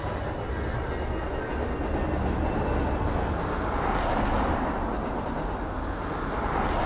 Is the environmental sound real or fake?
real